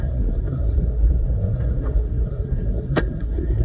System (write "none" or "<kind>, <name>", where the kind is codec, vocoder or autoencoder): codec, SNAC